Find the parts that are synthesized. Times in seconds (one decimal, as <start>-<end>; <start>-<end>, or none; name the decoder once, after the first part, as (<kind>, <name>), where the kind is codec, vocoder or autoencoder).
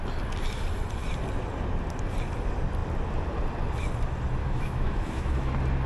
4.4-5.5 (autoencoder, DAC-VAE)